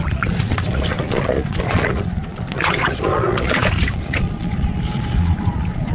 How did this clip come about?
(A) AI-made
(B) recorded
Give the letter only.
A